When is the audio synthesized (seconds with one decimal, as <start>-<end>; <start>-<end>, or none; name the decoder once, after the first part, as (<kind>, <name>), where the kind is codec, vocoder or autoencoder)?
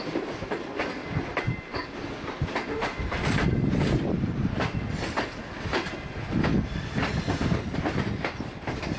1.0-2.1 (vocoder, BigVGAN v2); 6.5-7.1